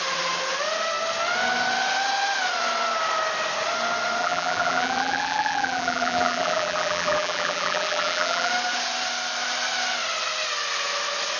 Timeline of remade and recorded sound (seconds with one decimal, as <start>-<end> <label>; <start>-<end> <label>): 0.0-4.2 recorded; 4.2-8.5 remade; 8.5-11.4 recorded